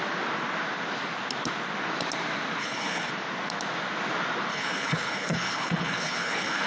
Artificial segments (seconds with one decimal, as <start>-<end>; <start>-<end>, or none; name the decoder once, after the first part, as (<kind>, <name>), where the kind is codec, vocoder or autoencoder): 2.6-3.1 (codec, HILCodec); 4.5-6.7